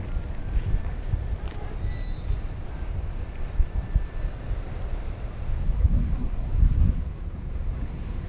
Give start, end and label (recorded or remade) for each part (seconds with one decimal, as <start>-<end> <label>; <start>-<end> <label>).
0.0-5.6 recorded; 5.6-8.3 remade